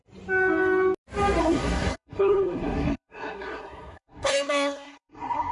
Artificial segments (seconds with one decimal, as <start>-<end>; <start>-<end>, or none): 1.4-5.5